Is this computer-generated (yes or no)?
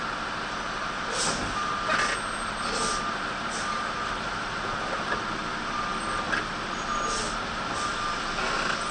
no